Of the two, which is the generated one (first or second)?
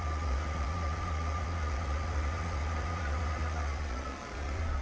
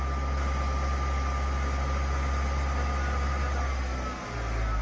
first